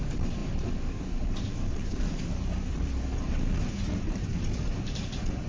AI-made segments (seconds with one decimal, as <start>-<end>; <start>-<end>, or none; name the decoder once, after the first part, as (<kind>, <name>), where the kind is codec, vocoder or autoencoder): 0.0-5.5 (vocoder, BigVGAN v2)